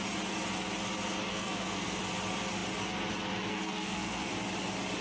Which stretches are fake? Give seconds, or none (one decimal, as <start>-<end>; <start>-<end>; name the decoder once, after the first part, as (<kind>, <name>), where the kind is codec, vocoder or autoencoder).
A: 1.3-2.0 (codec, SNAC); 3.5-4.3